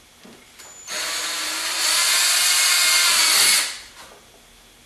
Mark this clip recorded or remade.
recorded